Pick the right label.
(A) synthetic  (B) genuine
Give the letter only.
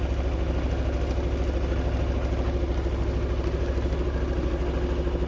B